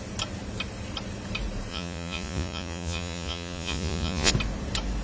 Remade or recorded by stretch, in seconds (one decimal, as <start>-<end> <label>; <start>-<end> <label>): 0.0-1.7 recorded; 1.7-4.3 remade; 4.3-5.0 recorded